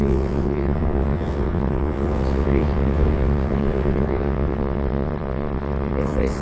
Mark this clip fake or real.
fake